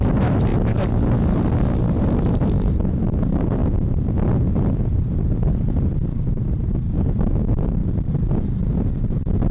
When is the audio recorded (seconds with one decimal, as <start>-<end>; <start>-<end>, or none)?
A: 3.6-4.5; 7.8-8.5